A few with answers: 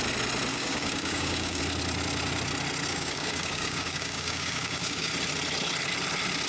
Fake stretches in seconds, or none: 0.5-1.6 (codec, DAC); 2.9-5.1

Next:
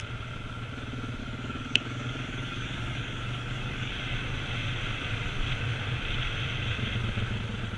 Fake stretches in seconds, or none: 1.2-3.9 (codec, DAC)